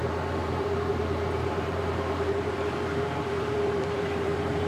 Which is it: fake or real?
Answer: fake